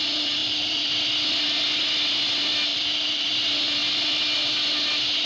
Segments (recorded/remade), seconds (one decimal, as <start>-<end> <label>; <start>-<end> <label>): 0.0-0.4 recorded; 0.4-0.9 remade; 0.9-2.7 recorded; 2.7-3.3 remade; 3.3-5.3 recorded